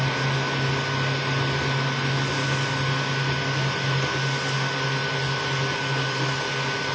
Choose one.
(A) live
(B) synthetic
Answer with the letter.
A